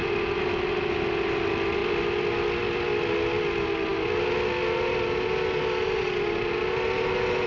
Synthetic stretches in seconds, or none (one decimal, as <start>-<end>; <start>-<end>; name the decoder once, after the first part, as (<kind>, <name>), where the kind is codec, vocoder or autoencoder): none